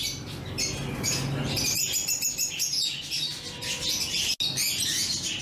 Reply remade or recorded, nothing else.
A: recorded